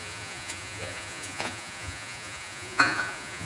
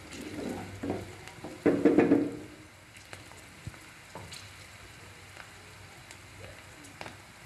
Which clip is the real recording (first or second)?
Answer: second